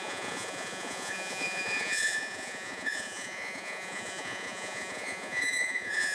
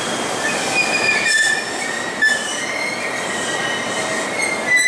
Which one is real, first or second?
second